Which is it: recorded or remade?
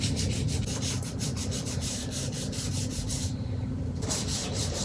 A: remade